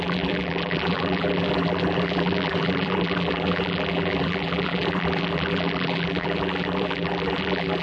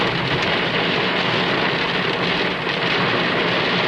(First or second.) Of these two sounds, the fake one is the first